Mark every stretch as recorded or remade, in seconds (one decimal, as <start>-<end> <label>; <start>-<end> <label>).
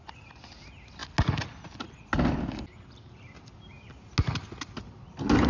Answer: 0.0-5.5 recorded